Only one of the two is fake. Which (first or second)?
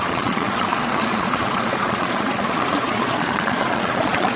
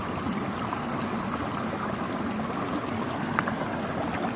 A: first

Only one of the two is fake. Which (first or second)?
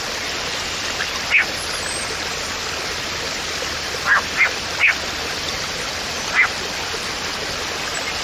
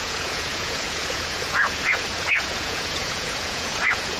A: second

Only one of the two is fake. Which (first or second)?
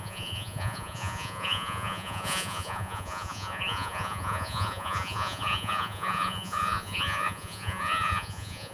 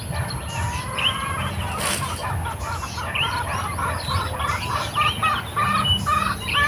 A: first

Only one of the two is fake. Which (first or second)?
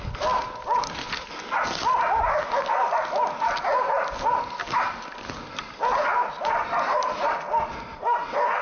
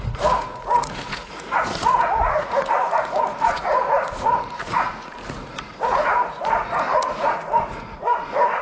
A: second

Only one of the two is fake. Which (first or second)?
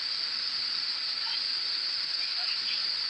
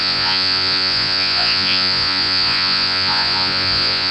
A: second